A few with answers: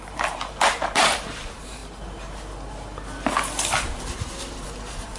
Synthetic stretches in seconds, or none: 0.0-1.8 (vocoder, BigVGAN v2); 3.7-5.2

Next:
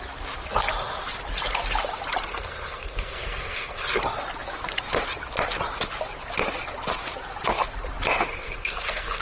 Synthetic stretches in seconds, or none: 2.3-4.0 (codec, SNAC); 8.3-9.2

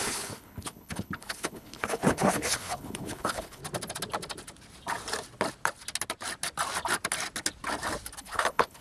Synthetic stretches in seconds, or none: 0.0-3.6 (codec, HILCodec); 8.2-8.8

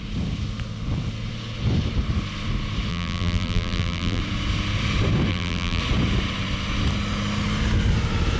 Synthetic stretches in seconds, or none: 2.9-4.2 (vocoder, BigVGAN v2); 5.3-5.8

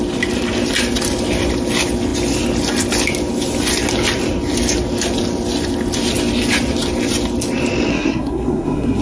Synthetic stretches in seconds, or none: 7.9-9.0 (codec, SNAC)

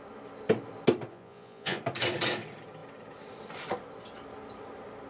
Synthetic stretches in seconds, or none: 1.1-1.8 (vocoder, Vocos)

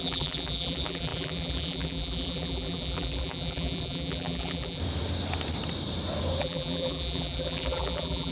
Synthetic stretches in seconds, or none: 0.0-4.8 (vocoder, BigVGAN v2); 6.4-8.3

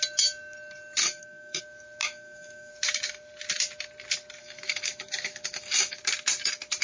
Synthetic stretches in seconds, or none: 1.0-1.6 (autoencoder, DAC-VAE); 2.0-2.7; 4.4-6.0